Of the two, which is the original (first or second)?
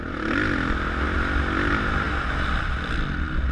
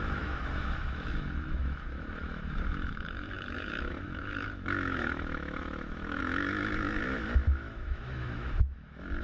first